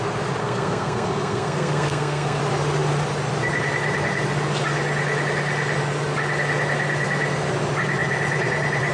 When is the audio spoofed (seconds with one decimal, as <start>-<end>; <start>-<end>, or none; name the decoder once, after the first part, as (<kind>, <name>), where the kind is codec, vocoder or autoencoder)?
0.4-2.4 (codec, SNAC)